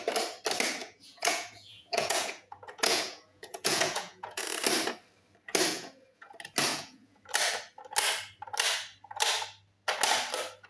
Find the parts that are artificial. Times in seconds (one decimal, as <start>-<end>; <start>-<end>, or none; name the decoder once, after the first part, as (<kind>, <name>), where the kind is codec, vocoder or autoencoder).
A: 0.8-4.4 (vocoder, Vocos); 5.7-6.3; 6.7-7.2